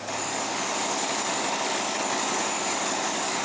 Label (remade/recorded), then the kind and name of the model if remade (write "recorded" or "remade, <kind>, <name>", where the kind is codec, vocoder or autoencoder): remade, codec, DAC